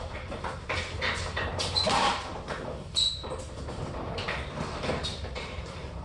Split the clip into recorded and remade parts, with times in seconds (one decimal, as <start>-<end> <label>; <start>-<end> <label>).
0.0-2.3 remade; 2.3-3.8 recorded; 3.8-6.0 remade